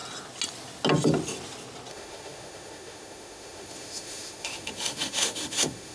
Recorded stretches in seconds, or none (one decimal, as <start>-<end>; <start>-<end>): 0.0-1.9